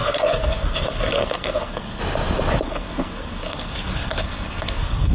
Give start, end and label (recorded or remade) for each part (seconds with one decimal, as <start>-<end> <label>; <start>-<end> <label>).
0.0-2.0 remade; 2.0-2.6 recorded; 2.6-5.1 remade